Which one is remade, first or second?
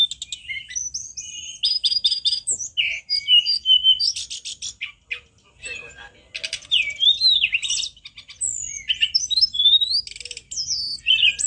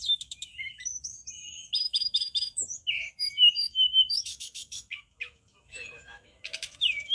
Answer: second